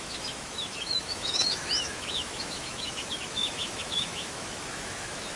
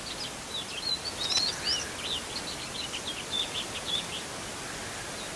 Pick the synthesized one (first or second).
first